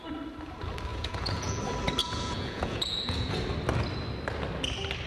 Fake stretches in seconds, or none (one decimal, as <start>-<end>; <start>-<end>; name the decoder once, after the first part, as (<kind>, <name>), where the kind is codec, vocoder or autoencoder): 0.9-1.6 (vocoder, Vocos); 2.0-3.3